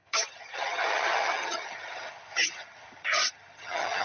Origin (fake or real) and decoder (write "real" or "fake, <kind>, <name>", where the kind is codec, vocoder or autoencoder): fake, vocoder, HiFi-GAN